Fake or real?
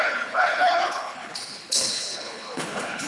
fake